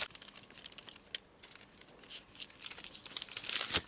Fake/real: real